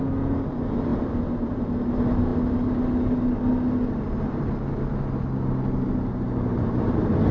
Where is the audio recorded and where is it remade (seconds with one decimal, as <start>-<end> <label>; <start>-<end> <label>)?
0.0-0.9 recorded; 0.9-1.7 remade; 1.7-6.5 recorded; 6.5-7.3 remade